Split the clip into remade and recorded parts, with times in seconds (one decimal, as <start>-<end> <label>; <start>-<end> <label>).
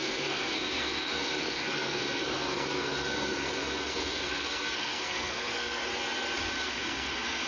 0.0-5.8 remade; 5.8-6.6 recorded; 6.6-7.5 remade